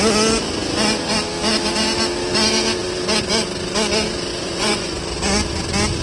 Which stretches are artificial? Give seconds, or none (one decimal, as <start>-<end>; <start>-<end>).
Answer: 4.3-5.0